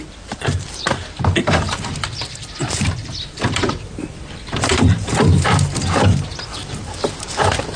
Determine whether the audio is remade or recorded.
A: remade